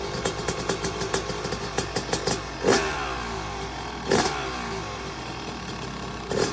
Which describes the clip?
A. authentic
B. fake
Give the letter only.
A